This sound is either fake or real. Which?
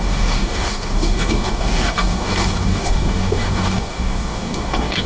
fake